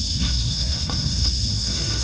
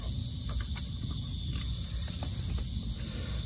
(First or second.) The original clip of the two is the second